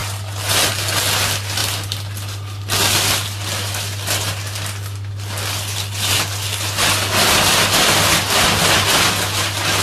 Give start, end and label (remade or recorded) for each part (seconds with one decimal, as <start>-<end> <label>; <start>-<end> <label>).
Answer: 0.0-1.6 recorded; 1.6-6.1 remade; 6.1-9.8 recorded

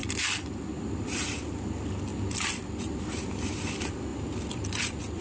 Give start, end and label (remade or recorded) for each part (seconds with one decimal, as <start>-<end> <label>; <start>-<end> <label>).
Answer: 0.0-2.1 recorded; 2.1-3.5 remade; 3.5-4.1 recorded; 4.1-5.2 remade

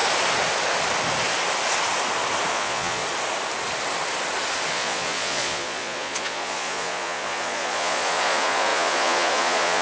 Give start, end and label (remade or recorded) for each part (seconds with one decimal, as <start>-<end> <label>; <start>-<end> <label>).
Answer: 0.0-2.5 recorded; 2.5-3.0 remade; 3.0-4.7 recorded; 4.7-9.8 remade